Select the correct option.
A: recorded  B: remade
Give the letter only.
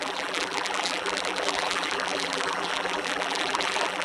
B